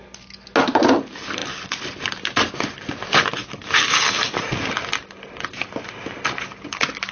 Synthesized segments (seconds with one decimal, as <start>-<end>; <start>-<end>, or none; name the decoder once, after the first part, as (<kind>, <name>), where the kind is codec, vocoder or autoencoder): none